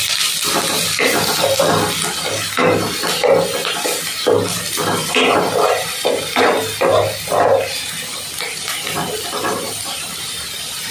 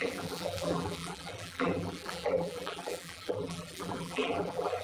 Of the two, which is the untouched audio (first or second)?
first